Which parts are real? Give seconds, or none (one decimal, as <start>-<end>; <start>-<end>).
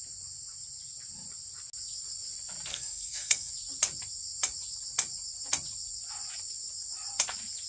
0.0-2.7; 3.5-7.7